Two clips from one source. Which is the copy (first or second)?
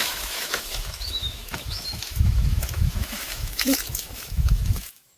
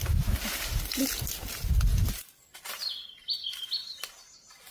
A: first